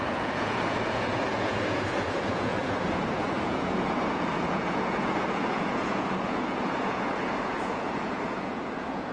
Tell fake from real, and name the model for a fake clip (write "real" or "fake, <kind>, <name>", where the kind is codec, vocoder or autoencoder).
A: fake, vocoder, Vocos